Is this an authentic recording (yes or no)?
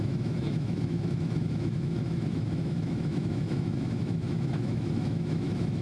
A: no